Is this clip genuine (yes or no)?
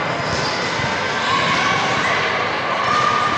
yes